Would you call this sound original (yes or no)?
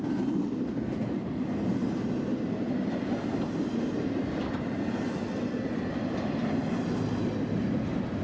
yes